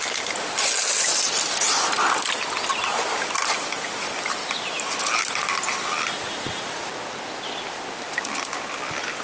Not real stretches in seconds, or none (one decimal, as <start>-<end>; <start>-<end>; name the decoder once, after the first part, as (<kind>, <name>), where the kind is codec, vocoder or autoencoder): none